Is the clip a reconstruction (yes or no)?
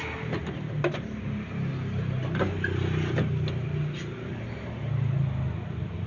no